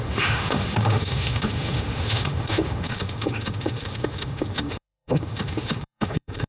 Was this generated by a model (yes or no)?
yes